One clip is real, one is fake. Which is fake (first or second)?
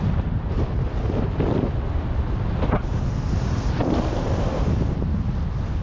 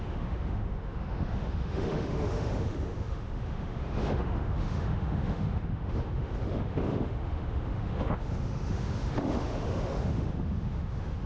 second